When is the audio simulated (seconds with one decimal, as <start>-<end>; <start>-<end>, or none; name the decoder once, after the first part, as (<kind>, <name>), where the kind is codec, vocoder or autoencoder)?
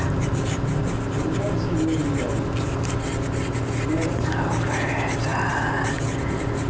none